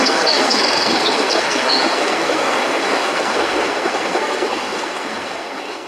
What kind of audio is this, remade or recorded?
remade